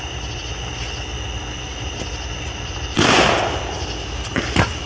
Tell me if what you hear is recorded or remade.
recorded